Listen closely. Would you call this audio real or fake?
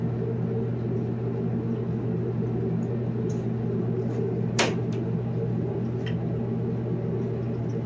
real